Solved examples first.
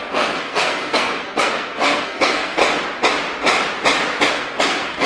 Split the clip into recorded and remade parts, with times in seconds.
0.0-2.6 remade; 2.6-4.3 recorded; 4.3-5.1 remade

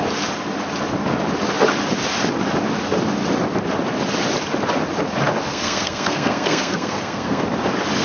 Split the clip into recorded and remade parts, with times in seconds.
0.0-5.5 recorded; 5.5-7.4 remade; 7.4-8.0 recorded

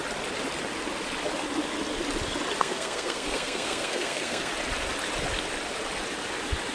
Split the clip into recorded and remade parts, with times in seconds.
0.0-2.6 recorded; 2.6-4.5 remade; 4.5-6.7 recorded